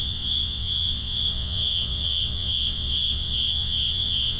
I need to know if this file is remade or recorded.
remade